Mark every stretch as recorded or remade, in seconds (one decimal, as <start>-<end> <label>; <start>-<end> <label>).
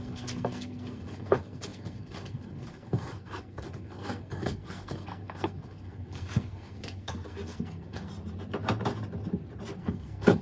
0.0-8.1 remade; 8.1-9.8 recorded; 9.8-10.4 remade